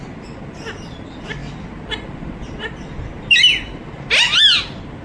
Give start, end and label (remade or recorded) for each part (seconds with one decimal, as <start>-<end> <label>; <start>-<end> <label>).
0.0-5.0 recorded